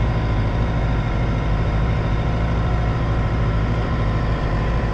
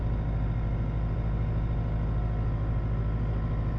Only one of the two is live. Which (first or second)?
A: second